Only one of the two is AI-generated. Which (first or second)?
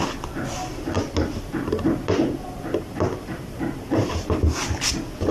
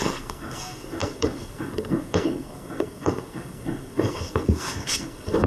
second